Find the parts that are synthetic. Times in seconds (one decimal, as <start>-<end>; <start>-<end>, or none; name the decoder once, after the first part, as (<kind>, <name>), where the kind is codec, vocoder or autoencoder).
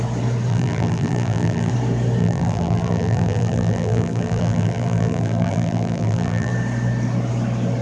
0.5-1.7 (vocoder, BigVGAN v2); 2.2-6.5